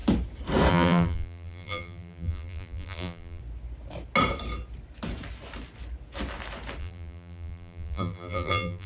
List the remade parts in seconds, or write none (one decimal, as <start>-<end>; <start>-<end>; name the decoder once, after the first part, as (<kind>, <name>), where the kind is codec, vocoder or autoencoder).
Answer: 0.7-3.4 (vocoder, BigVGAN v2); 6.8-8.9

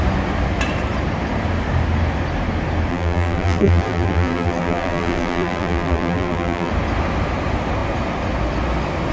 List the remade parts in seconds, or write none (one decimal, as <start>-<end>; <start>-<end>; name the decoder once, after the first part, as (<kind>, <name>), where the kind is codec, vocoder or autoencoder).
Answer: 2.9-6.7 (vocoder, BigVGAN v2)

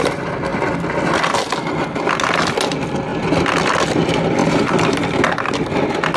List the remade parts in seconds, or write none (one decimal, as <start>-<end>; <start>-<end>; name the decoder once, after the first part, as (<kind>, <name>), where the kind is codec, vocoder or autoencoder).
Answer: 4.4-5.0 (vocoder, BigVGAN v2)

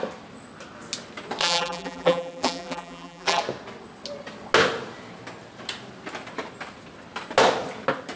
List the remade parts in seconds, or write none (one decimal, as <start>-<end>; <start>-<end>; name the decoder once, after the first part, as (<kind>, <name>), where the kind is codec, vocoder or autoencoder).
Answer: 1.4-3.4 (vocoder, BigVGAN v2)

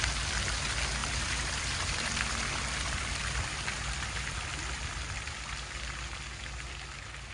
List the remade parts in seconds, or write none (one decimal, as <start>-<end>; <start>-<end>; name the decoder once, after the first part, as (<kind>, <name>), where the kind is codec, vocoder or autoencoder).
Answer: 1.0-5.3 (vocoder, BigVGAN v2)

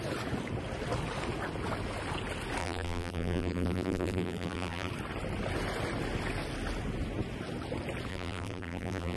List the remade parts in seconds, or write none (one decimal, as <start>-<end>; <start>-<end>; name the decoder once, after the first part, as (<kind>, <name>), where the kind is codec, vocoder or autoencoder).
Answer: 2.6-4.9 (vocoder, BigVGAN v2); 8.1-9.2

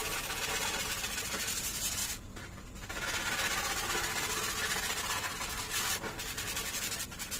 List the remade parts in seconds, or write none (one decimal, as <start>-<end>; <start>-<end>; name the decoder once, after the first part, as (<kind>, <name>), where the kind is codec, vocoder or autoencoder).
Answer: 0.0-0.7 (vocoder, BigVGAN v2)